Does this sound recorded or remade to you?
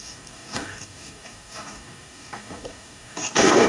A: remade